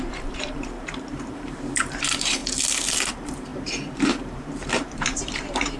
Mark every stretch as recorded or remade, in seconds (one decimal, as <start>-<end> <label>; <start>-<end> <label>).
0.0-2.4 remade; 2.4-3.1 recorded; 3.1-5.8 remade